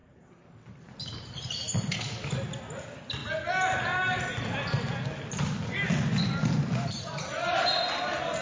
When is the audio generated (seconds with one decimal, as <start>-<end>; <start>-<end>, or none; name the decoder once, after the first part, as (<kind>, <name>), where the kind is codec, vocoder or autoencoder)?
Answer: none